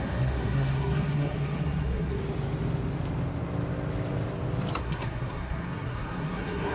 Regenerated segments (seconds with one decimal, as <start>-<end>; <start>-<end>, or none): 0.0-2.2; 4.8-6.7